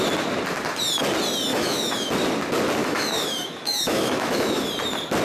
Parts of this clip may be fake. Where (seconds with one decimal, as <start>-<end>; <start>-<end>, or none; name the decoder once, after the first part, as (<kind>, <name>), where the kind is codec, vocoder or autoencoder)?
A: 1.5-2.1 (autoencoder, DAC-VAE); 2.8-4.7